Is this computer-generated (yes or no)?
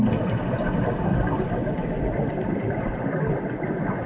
no